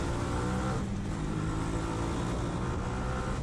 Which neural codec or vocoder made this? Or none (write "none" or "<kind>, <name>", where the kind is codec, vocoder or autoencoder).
none